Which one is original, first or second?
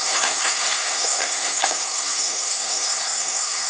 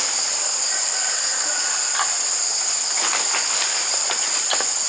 second